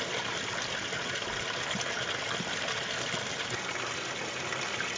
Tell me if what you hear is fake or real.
real